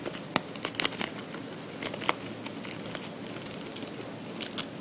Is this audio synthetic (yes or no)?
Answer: no